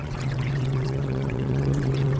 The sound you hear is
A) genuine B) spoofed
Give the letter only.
B